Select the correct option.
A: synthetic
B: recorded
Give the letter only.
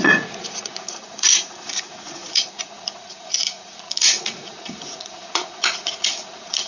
A